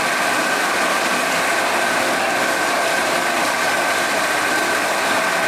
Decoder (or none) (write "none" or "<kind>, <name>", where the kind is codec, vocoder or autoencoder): none